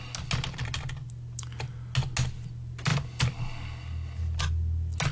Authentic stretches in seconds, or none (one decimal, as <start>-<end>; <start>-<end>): 0.0-5.1